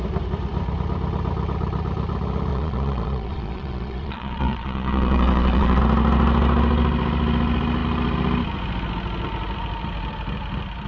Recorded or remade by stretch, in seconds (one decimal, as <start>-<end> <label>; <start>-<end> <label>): 0.0-2.5 recorded; 2.5-5.8 remade; 5.8-10.9 recorded